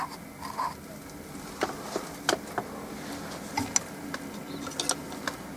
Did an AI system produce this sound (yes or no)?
no